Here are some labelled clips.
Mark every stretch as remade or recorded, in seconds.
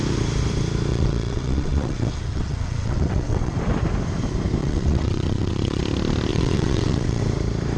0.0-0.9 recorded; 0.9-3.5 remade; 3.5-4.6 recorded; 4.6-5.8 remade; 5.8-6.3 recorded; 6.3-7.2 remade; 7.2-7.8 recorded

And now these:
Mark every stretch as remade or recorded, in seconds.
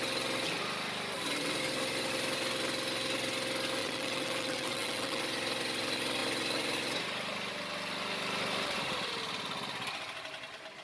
0.0-3.8 recorded; 3.8-5.2 remade; 5.2-10.8 recorded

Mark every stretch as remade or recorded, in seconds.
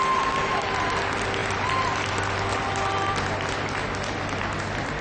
0.0-5.0 recorded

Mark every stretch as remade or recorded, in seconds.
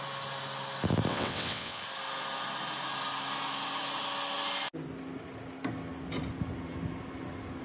0.0-1.1 recorded; 1.1-1.8 remade; 1.8-7.6 recorded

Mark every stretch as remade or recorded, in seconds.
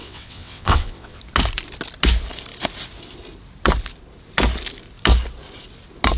0.0-1.2 remade; 1.2-6.2 recorded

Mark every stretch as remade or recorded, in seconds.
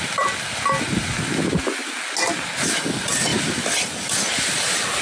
0.0-5.0 recorded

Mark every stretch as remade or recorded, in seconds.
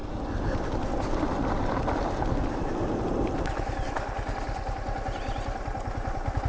0.0-6.5 recorded